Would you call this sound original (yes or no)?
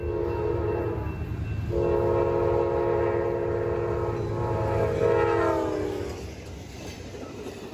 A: yes